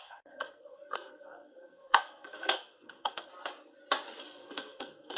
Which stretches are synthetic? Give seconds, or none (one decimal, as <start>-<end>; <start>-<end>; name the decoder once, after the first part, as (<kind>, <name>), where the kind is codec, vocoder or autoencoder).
0.0-3.3 (codec, SNAC); 4.2-5.2